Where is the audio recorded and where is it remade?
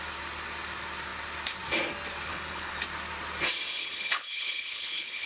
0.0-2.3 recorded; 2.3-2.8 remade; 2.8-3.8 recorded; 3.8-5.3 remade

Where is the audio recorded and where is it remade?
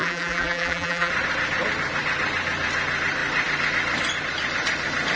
0.0-1.1 remade; 1.1-5.2 recorded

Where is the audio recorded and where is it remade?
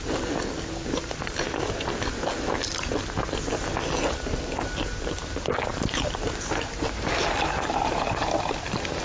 0.0-5.7 recorded; 5.7-8.3 remade; 8.3-9.0 recorded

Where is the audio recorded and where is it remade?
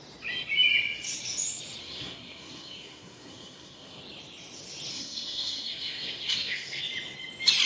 0.0-1.8 recorded; 1.8-4.0 remade; 4.0-4.9 recorded; 4.9-6.8 remade; 6.8-7.7 recorded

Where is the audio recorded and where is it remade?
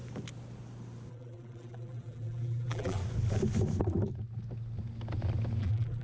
0.0-1.1 recorded; 1.1-3.0 remade; 3.0-5.6 recorded; 5.6-6.0 remade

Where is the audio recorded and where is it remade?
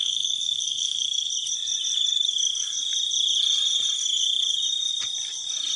0.0-1.3 remade; 1.3-5.8 recorded